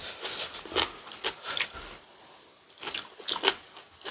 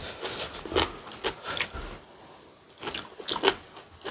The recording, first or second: second